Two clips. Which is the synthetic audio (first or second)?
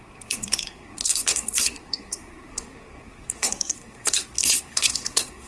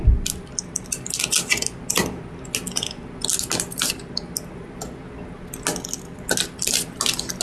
first